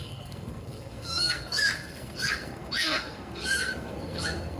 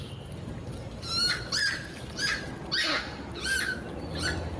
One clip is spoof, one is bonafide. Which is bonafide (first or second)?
second